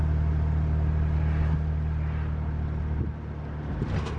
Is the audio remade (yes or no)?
no